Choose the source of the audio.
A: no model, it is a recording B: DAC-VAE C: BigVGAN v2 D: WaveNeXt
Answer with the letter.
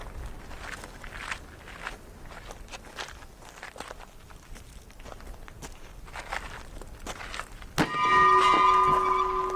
A